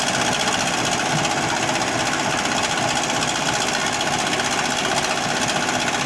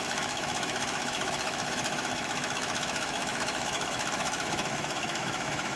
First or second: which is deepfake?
second